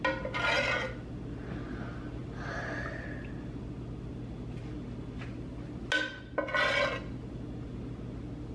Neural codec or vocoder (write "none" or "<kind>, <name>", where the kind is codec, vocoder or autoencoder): none